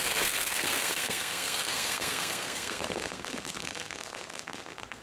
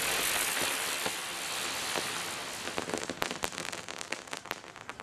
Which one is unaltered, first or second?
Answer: second